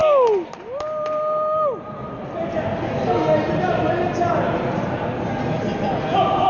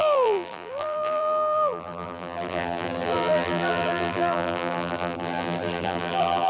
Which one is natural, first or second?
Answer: first